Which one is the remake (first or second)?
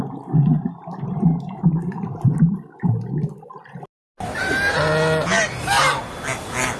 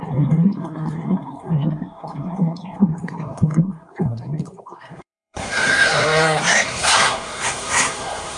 second